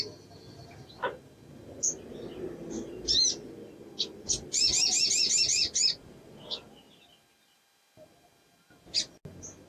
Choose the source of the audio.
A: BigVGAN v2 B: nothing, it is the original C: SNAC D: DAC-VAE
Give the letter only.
B